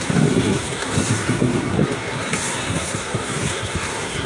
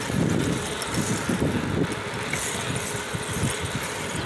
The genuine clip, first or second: second